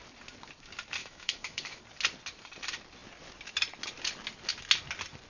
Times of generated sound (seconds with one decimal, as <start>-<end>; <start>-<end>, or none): 1.0-1.8